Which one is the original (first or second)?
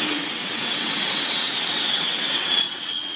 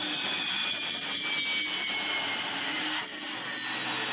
second